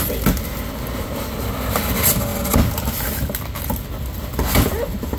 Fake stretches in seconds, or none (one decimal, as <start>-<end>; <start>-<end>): none